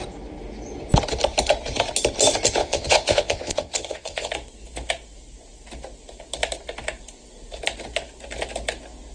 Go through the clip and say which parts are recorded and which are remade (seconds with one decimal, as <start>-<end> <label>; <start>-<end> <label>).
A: 0.0-2.6 recorded; 2.6-4.3 remade; 4.3-9.1 recorded